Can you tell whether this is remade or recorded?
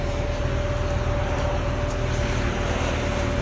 recorded